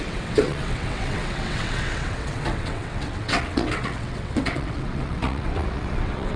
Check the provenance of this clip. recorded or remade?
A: remade